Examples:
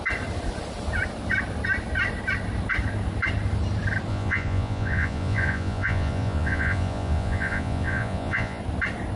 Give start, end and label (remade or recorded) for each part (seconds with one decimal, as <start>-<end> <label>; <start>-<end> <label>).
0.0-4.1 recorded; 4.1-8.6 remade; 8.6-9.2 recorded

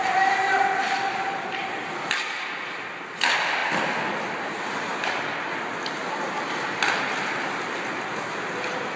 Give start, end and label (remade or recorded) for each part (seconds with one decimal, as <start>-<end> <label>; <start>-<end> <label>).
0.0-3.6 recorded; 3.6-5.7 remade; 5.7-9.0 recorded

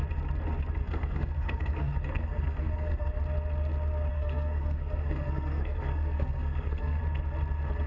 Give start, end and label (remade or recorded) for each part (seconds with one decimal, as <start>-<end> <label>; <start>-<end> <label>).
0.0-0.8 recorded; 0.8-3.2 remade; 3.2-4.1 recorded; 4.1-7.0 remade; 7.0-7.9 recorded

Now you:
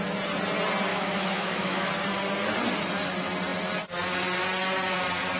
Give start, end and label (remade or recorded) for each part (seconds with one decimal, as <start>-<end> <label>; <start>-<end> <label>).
0.0-0.9 recorded; 0.9-1.9 remade; 1.9-5.4 recorded

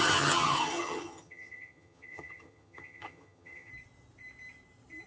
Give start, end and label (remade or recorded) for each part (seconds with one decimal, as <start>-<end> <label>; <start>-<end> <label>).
0.0-3.7 remade; 3.7-5.1 recorded

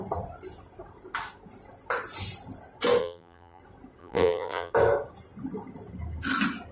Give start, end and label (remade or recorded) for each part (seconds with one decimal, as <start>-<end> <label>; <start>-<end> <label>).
0.0-3.0 recorded; 3.0-3.6 remade; 3.6-4.0 recorded; 4.0-4.7 remade; 4.7-6.7 recorded